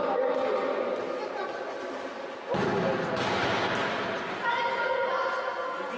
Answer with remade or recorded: recorded